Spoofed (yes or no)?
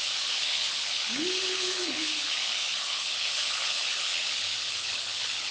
yes